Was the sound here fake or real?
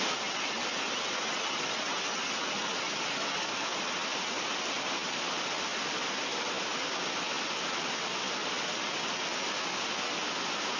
real